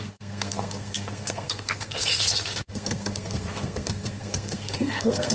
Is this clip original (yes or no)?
no